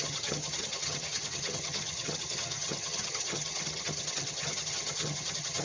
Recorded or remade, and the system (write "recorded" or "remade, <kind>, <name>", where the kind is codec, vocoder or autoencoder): remade, vocoder, HiFi-GAN